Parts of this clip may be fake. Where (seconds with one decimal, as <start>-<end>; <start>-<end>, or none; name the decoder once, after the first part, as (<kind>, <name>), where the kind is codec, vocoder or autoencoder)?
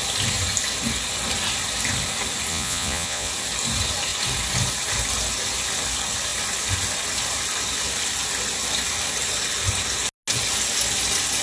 2.5-3.3 (vocoder, Vocos)